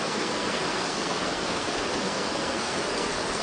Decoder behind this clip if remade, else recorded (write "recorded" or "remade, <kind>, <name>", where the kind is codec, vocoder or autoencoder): remade, codec, SNAC